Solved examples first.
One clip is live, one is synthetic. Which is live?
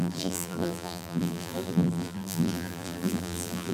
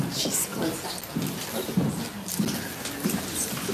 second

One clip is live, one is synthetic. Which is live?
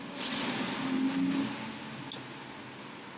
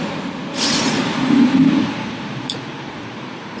first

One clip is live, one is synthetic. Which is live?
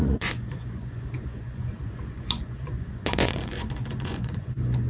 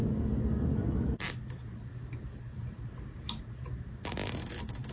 second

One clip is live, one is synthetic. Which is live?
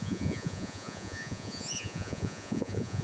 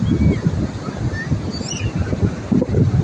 second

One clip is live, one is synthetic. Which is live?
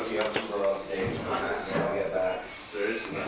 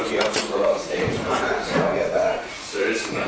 first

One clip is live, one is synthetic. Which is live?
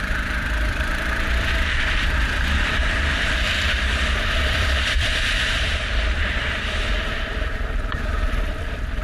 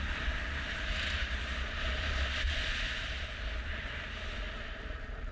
second